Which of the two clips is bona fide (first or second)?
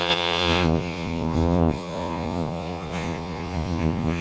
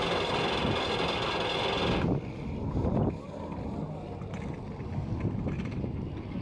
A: second